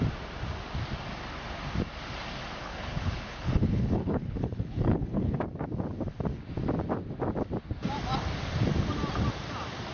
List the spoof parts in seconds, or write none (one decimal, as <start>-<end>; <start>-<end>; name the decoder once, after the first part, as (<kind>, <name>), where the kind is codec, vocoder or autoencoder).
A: 2.6-5.4 (codec, HILCodec)